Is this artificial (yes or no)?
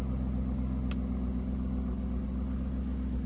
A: no